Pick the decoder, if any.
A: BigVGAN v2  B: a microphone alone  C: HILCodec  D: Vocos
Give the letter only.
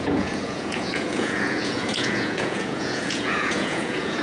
D